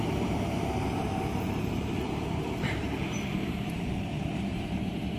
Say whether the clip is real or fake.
fake